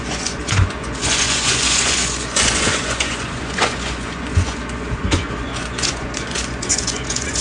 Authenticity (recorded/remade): remade